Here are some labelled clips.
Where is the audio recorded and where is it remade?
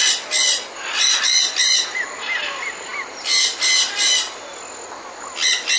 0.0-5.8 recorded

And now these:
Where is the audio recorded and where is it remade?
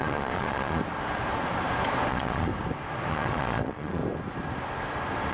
0.0-0.8 remade; 0.8-2.1 recorded; 2.1-2.5 remade; 2.5-3.1 recorded; 3.1-4.0 remade; 4.0-5.3 recorded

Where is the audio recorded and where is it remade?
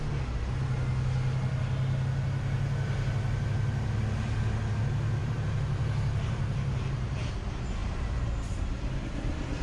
0.0-5.2 recorded; 5.2-7.3 remade; 7.3-7.8 recorded; 7.8-8.7 remade; 8.7-9.6 recorded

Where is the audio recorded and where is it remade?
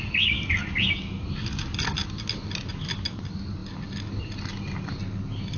0.0-5.6 recorded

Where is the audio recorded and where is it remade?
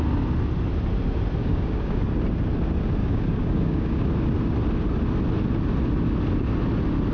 0.0-1.4 recorded; 1.4-2.0 remade; 2.0-3.0 recorded; 3.0-4.1 remade; 4.1-7.1 recorded